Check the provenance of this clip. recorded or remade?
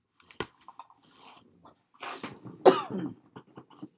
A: recorded